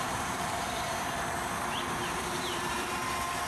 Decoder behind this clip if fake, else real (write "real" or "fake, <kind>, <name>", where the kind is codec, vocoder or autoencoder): fake, vocoder, BigVGAN v2